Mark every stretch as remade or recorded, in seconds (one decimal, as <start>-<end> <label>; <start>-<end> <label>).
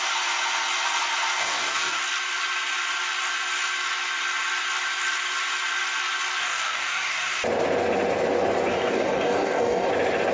0.0-1.4 recorded; 1.4-2.0 remade; 2.0-6.4 recorded; 6.4-7.4 remade; 7.4-8.7 recorded; 8.7-9.9 remade; 9.9-10.3 recorded